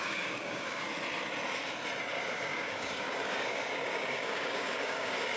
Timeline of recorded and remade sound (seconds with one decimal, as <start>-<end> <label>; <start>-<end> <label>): 0.0-0.9 remade; 0.9-2.1 recorded; 2.1-5.4 remade

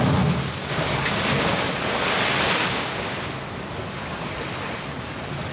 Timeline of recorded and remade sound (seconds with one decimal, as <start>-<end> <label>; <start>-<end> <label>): 0.0-0.6 recorded; 0.6-1.6 remade; 1.6-2.6 recorded; 2.6-3.2 remade; 3.2-5.5 recorded

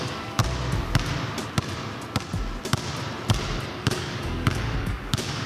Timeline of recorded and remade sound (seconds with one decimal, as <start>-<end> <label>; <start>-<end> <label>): 0.0-0.4 remade; 0.4-3.7 recorded; 3.7-5.5 remade

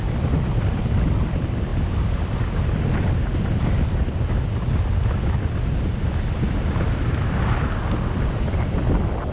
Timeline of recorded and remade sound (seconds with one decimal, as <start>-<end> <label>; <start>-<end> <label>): 0.0-9.3 recorded

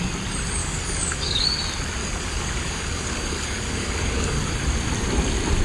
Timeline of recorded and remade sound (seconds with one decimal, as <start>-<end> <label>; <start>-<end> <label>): 0.0-0.6 recorded; 0.6-1.5 remade; 1.5-2.0 recorded; 2.0-4.5 remade; 4.5-5.6 recorded

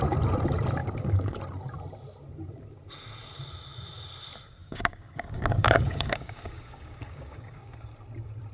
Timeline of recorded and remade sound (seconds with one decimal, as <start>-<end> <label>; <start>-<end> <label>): 0.0-0.8 recorded; 0.8-1.4 remade; 1.4-4.6 recorded; 4.6-7.7 remade; 7.7-8.5 recorded

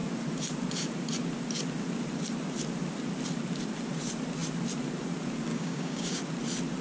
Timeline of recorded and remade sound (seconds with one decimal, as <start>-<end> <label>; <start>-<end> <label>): 0.0-5.5 recorded; 5.5-6.2 remade; 6.2-6.8 recorded